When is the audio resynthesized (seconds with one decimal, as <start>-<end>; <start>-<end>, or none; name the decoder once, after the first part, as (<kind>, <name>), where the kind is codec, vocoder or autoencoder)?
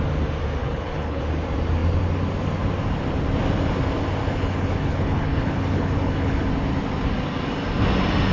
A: 0.6-1.2 (codec, HILCodec); 4.2-6.4